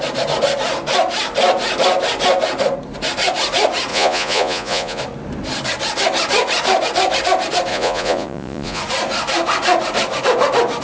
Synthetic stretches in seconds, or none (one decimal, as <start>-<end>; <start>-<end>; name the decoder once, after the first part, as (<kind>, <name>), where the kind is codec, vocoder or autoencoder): 3.9-5.0 (vocoder, Vocos); 7.7-8.8